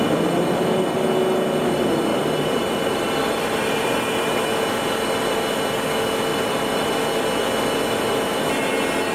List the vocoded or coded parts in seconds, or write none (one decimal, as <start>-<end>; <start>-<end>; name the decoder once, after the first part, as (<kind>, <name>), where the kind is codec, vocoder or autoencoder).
2.1-4.4 (vocoder, BigVGAN v2); 6.3-6.9